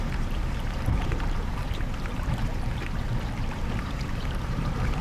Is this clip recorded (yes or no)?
no